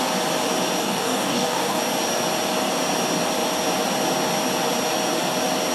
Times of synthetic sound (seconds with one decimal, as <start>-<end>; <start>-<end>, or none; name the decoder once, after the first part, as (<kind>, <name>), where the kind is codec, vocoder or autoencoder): 0.8-1.8 (codec, DAC)